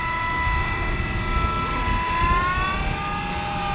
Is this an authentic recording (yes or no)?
yes